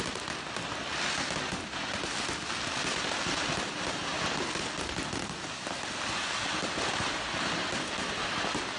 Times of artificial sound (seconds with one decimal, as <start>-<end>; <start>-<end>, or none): none